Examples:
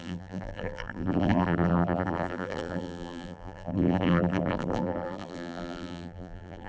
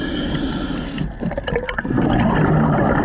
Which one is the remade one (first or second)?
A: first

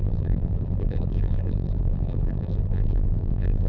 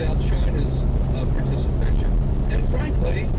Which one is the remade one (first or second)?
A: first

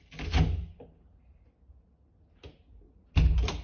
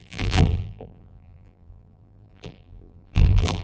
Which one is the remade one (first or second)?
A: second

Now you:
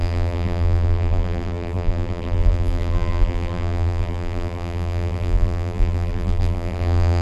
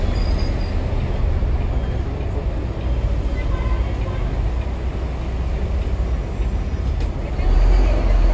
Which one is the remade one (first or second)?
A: first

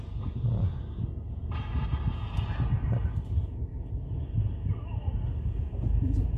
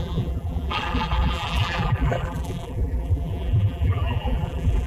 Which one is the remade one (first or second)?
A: second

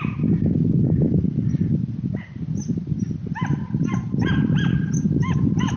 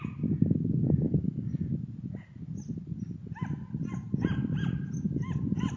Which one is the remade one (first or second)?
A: first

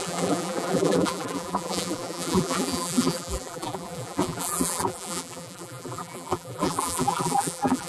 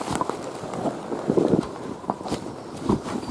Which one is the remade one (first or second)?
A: first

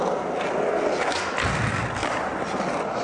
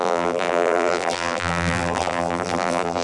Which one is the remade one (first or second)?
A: second